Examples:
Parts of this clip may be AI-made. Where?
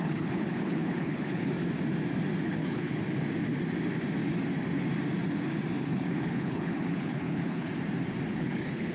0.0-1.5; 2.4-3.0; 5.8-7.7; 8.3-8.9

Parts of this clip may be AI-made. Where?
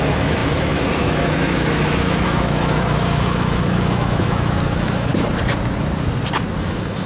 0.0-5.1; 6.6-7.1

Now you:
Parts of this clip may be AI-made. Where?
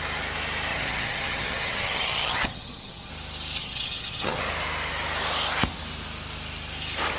0.7-3.1; 3.6-4.4